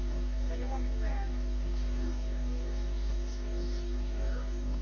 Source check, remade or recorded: remade